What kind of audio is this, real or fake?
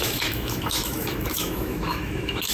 fake